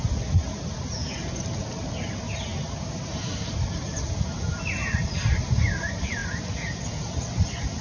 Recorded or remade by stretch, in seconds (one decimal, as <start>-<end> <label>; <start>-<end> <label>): 0.0-2.5 recorded; 2.5-3.3 remade; 3.3-7.8 recorded